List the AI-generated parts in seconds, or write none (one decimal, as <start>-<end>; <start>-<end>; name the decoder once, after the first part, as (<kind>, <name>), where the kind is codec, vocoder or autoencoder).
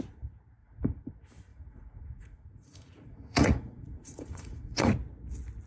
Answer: 0.6-1.1 (vocoder, Vocos); 1.5-4.9